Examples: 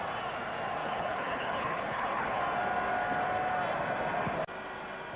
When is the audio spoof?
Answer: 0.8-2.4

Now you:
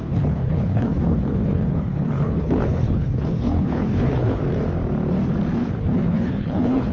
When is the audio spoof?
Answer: 0.0-4.4; 5.5-6.9

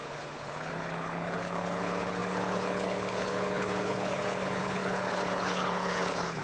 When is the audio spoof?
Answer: 0.0-6.4

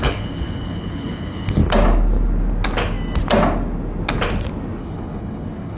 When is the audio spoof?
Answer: 0.0-1.6; 4.8-5.8

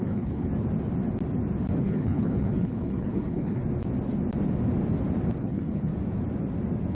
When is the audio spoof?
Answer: 0.0-0.5; 1.8-3.6; 5.4-5.9

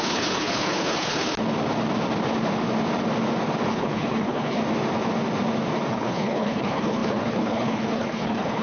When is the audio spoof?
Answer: 0.0-1.3; 3.7-4.6; 5.9-8.6

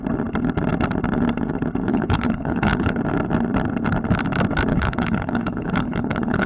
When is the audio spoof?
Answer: 1.9-3.0; 4.7-6.5